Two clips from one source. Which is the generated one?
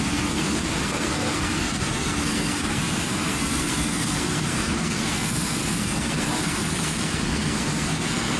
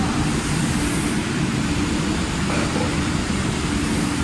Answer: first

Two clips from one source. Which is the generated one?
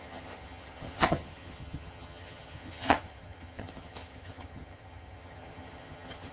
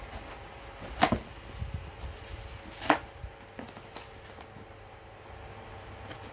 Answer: first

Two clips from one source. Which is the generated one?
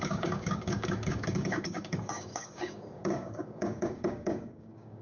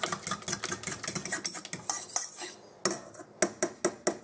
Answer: first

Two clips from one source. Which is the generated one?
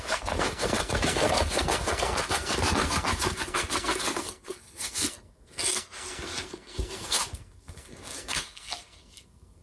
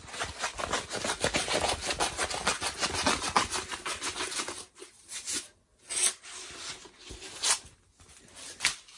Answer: first